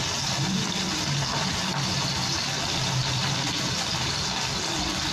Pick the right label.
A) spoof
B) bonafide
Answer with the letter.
B